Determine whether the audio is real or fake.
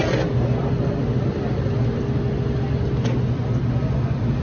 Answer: real